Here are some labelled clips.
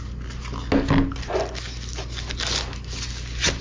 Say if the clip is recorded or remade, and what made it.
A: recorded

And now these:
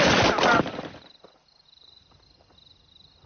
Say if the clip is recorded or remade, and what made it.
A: remade, vocoder, BigVGAN v2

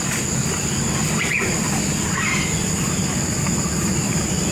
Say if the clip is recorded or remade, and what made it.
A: recorded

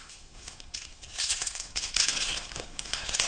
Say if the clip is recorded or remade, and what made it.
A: remade, codec, SNAC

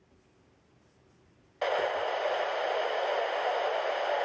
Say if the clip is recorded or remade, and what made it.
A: recorded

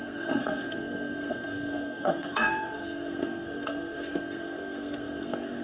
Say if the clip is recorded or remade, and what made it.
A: remade, codec, SNAC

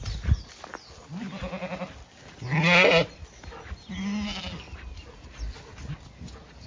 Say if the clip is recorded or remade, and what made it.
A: recorded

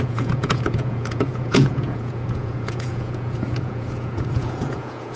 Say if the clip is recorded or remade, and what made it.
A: remade, vocoder, Vocos